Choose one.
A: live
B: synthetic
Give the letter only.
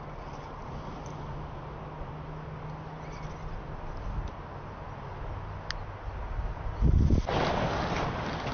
A